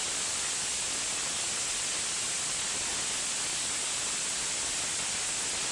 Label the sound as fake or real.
real